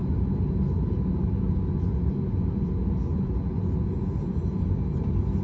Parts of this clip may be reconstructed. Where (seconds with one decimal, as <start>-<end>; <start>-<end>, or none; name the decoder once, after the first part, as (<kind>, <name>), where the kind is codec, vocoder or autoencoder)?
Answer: none